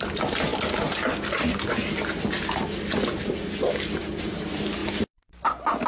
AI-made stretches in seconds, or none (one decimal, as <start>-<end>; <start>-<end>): none